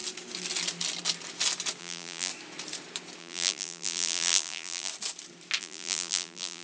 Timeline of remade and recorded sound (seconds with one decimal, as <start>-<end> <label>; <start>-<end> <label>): 0.0-1.8 recorded; 1.8-2.3 remade; 2.3-3.2 recorded; 3.2-4.9 remade; 4.9-5.6 recorded; 5.6-6.6 remade